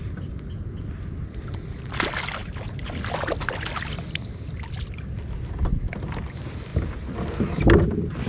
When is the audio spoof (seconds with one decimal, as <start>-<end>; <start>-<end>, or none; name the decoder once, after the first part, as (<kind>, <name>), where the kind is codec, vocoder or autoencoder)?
2.4-5.1 (vocoder, BigVGAN v2)